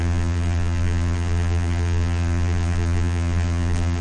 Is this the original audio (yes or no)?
no